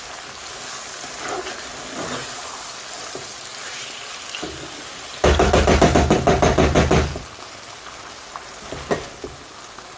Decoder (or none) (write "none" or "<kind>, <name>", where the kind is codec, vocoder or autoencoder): none